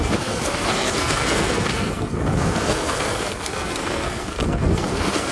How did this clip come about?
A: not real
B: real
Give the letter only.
A